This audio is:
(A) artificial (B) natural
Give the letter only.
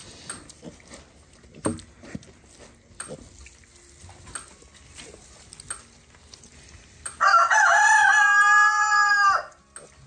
B